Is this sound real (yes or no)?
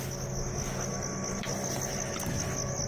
yes